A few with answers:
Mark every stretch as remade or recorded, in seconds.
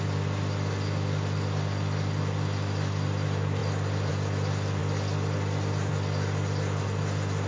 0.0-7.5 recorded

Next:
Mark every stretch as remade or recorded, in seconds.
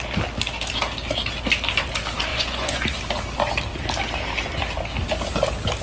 0.0-2.3 recorded; 2.3-2.8 remade; 2.8-5.8 recorded